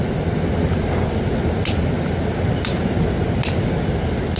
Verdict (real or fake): real